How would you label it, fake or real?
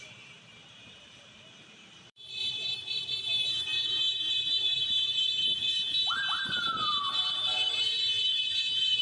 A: fake